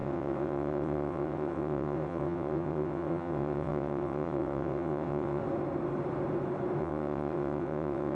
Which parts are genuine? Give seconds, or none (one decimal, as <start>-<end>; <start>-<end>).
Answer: 5.4-6.8